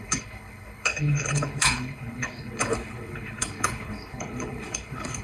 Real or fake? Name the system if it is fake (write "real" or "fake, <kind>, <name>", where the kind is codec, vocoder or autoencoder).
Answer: fake, codec, HILCodec